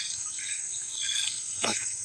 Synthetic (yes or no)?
yes